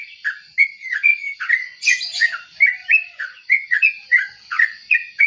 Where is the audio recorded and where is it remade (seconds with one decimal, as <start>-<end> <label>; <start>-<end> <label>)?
0.0-0.6 recorded; 0.6-5.3 remade